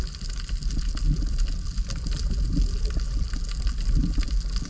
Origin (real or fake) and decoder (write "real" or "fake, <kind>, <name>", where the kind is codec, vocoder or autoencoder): real